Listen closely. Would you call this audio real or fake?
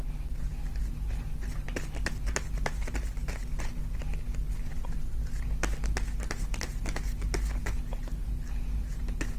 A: real